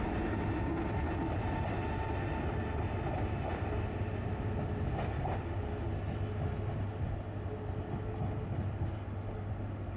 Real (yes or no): yes